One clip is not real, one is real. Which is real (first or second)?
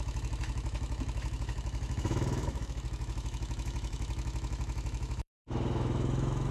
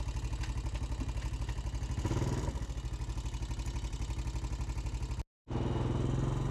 second